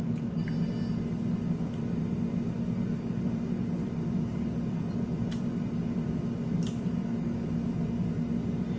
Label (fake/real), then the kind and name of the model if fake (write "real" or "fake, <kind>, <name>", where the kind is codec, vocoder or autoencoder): real